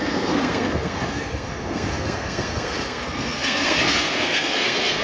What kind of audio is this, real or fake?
fake